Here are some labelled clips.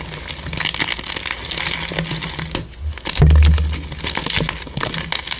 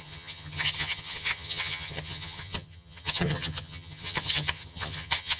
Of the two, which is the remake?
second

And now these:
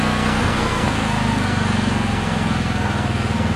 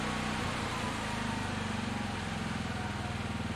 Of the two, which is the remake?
first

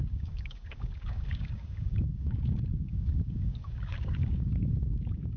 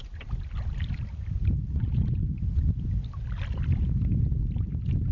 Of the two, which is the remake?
first